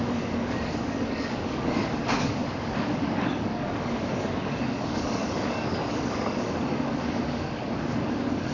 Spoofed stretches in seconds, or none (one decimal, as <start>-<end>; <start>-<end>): 0.0-8.5